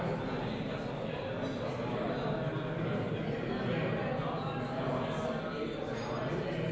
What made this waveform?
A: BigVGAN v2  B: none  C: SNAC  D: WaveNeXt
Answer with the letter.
B